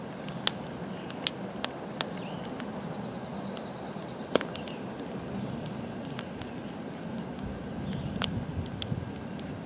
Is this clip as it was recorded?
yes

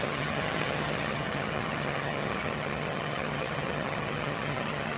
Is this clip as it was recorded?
no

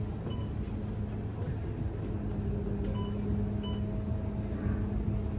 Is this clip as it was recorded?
yes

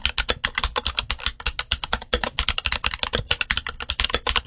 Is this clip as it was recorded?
yes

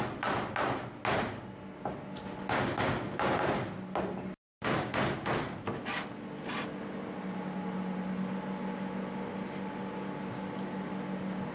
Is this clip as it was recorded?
yes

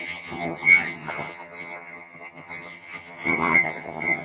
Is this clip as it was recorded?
no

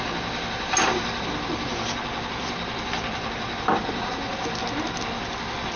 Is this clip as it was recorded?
yes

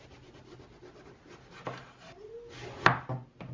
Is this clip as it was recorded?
yes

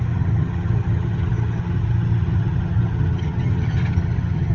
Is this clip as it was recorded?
no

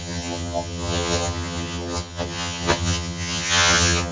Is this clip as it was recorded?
no